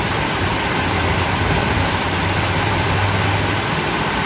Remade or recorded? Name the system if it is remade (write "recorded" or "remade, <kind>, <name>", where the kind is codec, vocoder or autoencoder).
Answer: remade, vocoder, BigVGAN v2